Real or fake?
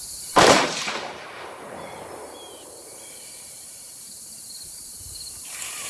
fake